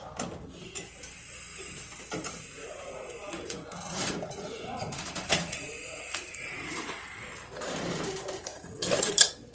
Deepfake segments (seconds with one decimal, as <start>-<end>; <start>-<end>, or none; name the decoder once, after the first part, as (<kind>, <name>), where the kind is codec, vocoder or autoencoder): 2.2-7.4 (vocoder, Vocos); 8.5-9.1